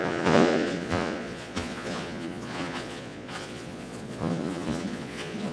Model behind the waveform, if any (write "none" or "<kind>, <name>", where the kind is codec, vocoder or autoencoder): vocoder, Vocos